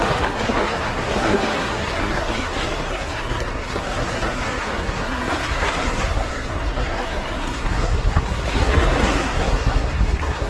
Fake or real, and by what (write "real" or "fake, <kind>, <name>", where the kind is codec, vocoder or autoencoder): fake, codec, SNAC